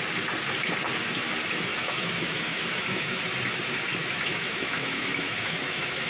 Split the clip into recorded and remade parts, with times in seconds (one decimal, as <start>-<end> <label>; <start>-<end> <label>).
0.0-1.7 recorded; 1.7-3.2 remade; 3.2-4.0 recorded; 4.0-6.1 remade